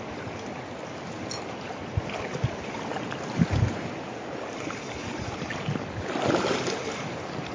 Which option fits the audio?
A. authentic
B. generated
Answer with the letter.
A